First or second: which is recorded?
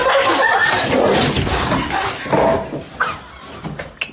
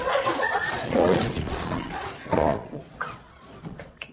first